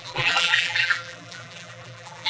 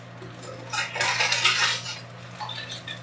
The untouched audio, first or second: second